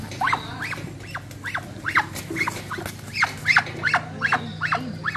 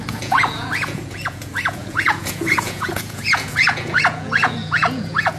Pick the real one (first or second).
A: first